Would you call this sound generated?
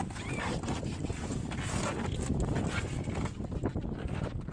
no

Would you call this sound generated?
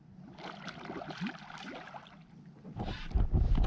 no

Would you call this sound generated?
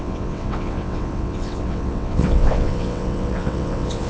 yes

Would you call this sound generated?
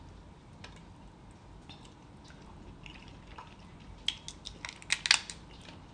no